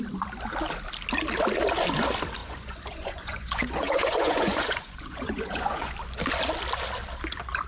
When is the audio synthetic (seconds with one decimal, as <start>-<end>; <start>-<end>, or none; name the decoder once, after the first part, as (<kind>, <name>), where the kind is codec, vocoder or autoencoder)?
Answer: 2.4-5.9 (vocoder, Vocos)